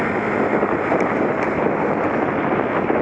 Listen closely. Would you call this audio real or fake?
real